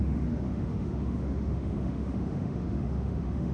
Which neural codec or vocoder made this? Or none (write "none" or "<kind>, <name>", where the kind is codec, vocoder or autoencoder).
autoencoder, DAC-VAE